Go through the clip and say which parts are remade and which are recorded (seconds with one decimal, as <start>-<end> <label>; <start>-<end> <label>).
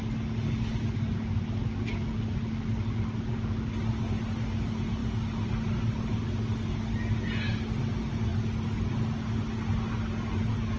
0.0-10.8 recorded